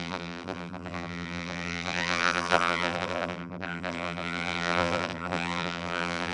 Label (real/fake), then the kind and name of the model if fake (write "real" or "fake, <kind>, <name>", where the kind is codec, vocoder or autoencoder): fake, vocoder, BigVGAN v2